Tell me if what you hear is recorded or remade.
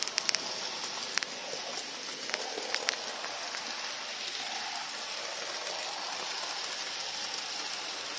recorded